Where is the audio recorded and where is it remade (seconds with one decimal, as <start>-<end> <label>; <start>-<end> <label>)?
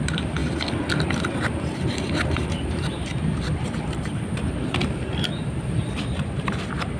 0.0-0.4 remade; 0.4-1.0 recorded; 1.0-3.1 remade; 3.1-4.0 recorded; 4.0-7.0 remade